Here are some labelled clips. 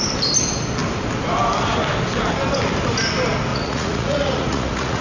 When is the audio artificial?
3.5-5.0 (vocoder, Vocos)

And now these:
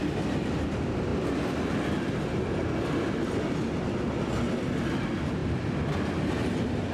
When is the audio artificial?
none

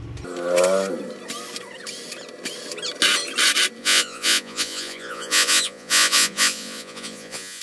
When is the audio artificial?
3.8-7.6 (vocoder, Vocos)

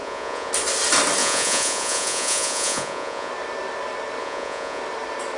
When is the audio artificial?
0.0-0.5 (vocoder, Vocos); 1.2-3.3; 4.2-4.8